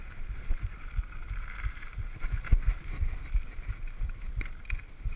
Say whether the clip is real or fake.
fake